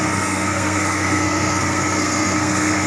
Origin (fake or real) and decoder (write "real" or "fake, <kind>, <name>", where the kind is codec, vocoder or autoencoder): fake, codec, SNAC